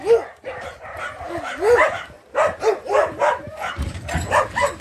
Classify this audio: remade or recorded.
remade